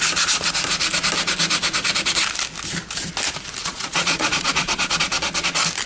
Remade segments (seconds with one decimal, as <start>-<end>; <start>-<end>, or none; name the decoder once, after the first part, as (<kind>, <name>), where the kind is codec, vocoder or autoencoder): 3.6-5.0 (vocoder, Vocos)